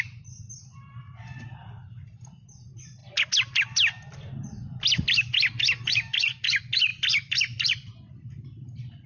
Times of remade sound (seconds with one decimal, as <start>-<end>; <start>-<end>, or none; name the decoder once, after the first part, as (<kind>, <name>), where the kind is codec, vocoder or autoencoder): 6.9-9.1 (vocoder, BigVGAN v2)

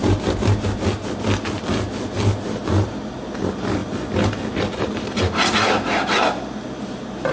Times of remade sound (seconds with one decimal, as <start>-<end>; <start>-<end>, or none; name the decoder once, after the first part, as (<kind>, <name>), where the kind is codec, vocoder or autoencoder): none